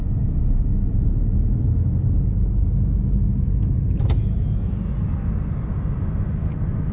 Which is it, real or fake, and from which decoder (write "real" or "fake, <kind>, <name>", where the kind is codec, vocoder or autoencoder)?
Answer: real